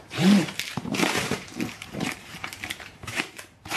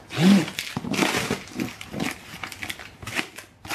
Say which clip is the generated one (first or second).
first